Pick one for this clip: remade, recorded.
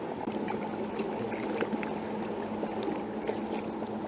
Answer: recorded